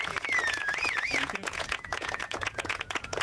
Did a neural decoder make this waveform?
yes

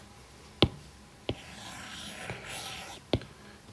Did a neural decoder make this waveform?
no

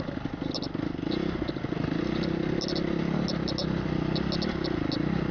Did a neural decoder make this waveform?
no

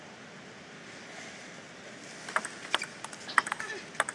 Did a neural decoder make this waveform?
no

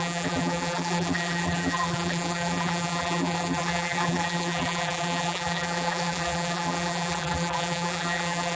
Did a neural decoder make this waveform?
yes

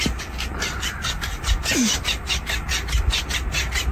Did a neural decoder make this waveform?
no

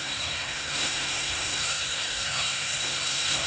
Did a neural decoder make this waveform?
yes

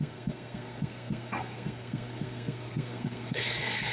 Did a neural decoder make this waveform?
yes